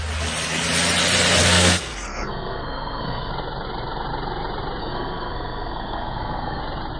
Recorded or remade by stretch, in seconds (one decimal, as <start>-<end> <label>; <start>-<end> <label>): 0.0-1.4 recorded; 1.4-3.3 remade; 3.3-4.8 recorded; 4.8-6.6 remade; 6.6-7.0 recorded